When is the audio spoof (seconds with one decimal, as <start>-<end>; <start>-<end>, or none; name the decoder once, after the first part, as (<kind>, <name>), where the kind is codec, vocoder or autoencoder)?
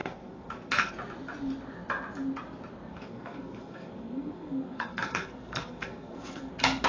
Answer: 0.0-0.9 (codec, SNAC); 2.9-6.5